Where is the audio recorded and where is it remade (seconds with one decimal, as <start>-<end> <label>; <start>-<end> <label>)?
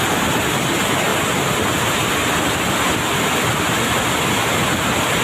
0.0-5.2 recorded